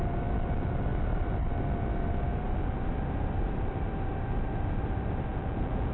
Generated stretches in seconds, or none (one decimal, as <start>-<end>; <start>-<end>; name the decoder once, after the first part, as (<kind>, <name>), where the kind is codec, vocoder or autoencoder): 5.3-5.9 (vocoder, Vocos)

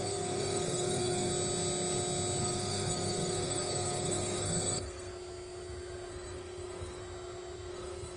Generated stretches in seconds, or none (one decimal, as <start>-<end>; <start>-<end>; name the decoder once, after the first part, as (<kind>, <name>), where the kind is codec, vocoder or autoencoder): 0.0-1.3 (codec, SNAC); 2.4-5.1; 6.1-7.0; 7.7-8.2

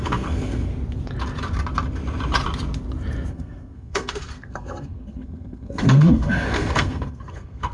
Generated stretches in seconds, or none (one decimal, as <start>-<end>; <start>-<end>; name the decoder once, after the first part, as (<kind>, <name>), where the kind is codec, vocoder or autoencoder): 0.0-0.7 (codec, SNAC); 3.3-7.7

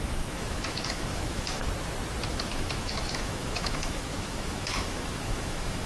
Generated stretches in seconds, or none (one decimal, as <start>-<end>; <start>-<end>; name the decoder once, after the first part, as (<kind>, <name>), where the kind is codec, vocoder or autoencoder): 0.0-1.6 (autoencoder, DAC-VAE); 2.3-5.9

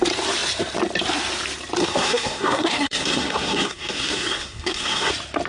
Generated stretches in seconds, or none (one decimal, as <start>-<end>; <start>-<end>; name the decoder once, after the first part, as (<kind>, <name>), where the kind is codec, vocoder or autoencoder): 1.8-5.1 (codec, SNAC)